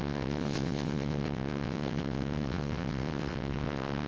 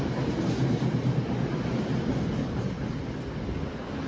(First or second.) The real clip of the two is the second